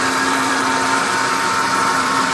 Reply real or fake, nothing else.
fake